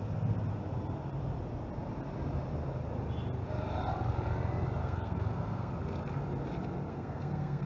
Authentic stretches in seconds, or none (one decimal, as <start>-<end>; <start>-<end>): 0.0-4.8; 5.7-6.9